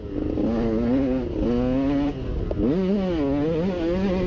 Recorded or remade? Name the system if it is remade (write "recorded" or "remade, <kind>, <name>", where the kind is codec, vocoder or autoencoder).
recorded